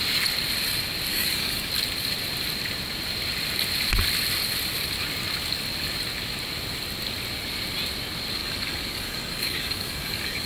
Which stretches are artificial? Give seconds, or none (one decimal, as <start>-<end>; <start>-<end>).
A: 1.1-1.7; 8.4-10.5